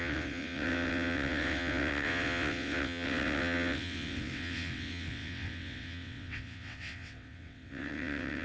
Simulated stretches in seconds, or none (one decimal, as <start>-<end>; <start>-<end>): 0.0-8.4